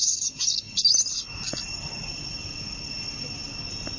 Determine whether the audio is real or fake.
real